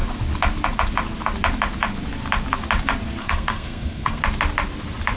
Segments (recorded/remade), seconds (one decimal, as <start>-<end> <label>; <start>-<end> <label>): 0.0-3.2 recorded; 3.2-4.2 remade; 4.2-5.2 recorded